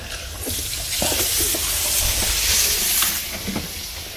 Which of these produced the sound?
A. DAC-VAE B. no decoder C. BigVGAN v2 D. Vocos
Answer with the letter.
B